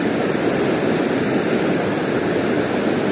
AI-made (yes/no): no